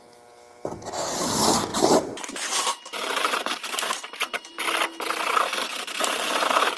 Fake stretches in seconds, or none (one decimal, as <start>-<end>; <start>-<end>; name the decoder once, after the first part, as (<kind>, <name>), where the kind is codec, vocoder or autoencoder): 1.7-4.5 (vocoder, BigVGAN v2); 5.7-6.8